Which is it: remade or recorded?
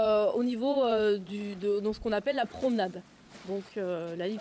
remade